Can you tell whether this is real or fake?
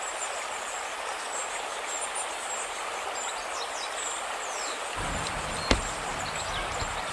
real